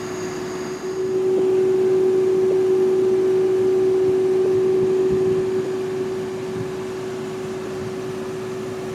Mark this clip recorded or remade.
recorded